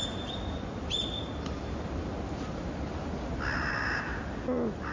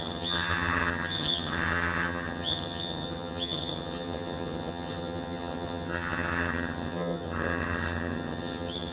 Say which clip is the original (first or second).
first